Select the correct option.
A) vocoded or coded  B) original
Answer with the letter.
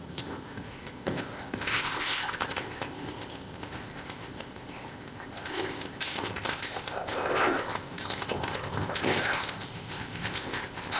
A